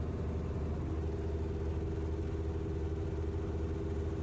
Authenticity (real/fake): real